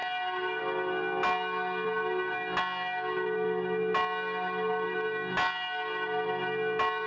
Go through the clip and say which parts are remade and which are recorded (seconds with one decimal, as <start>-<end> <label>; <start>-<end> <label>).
0.0-7.1 recorded